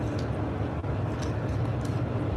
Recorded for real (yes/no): yes